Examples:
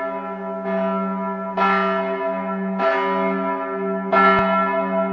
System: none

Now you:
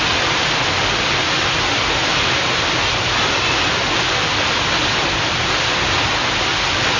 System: none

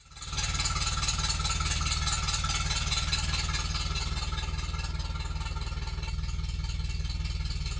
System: none